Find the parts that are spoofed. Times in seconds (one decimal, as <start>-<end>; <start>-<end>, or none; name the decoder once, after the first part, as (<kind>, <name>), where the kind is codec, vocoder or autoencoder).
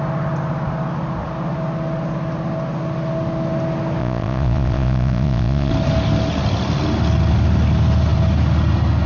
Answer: 4.0-5.7 (vocoder, Vocos)